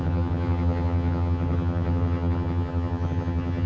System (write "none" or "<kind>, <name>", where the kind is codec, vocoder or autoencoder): vocoder, HiFi-GAN